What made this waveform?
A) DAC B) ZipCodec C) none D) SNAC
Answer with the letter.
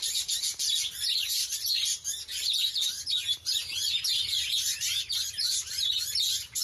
C